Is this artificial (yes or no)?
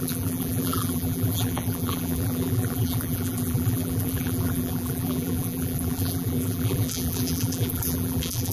yes